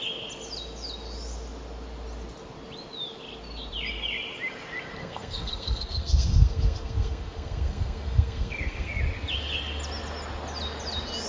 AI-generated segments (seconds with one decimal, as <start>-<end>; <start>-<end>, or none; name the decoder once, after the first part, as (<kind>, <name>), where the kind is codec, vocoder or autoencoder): 5.0-9.0 (codec, SNAC)